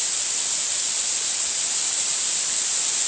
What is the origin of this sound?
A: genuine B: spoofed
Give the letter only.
A